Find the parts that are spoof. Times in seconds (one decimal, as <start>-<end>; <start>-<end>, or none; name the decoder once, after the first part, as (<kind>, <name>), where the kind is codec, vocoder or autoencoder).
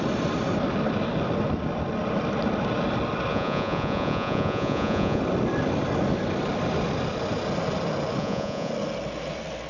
3.3-5.2 (vocoder, Vocos); 8.2-8.7